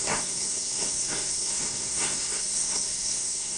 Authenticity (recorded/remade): remade